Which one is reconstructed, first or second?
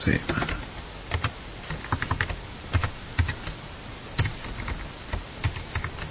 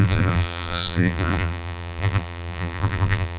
second